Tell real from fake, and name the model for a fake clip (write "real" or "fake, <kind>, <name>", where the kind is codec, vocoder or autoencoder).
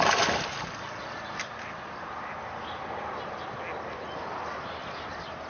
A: real